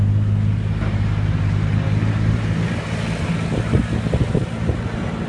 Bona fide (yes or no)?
yes